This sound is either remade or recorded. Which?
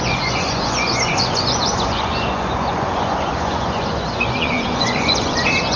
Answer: remade